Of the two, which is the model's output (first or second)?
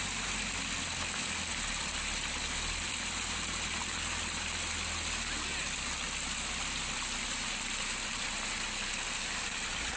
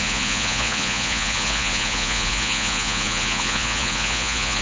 second